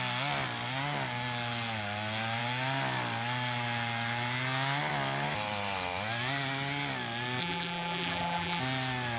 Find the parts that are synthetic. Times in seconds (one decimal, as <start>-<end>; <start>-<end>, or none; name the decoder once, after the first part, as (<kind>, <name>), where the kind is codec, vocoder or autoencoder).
7.4-8.6 (vocoder, BigVGAN v2)